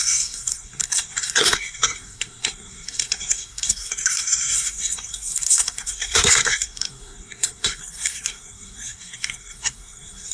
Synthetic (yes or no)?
yes